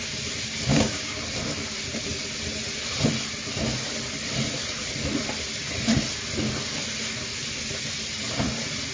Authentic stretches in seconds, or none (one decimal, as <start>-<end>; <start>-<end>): 0.0-0.7; 1.2-8.9